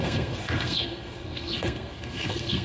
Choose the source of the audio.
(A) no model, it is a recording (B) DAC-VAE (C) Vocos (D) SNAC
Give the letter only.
D